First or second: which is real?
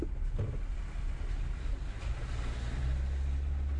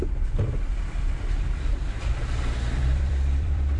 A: first